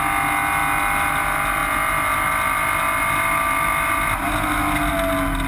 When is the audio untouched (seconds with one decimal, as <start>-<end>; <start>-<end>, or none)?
0.0-5.5